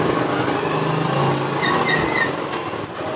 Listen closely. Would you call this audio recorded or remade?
recorded